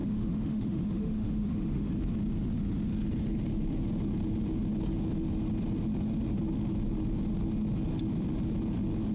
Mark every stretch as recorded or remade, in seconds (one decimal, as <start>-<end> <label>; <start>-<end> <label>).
0.0-1.9 remade; 1.9-9.1 recorded